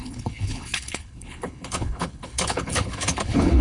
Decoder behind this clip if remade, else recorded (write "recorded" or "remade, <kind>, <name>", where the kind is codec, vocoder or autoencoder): remade, codec, HILCodec